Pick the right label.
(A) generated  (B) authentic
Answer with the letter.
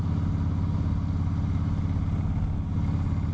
B